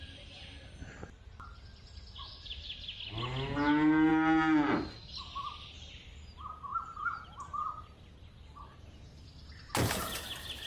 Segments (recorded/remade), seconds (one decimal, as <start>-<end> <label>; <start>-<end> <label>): 0.0-10.7 recorded